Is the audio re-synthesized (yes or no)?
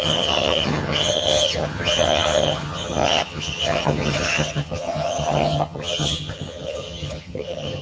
yes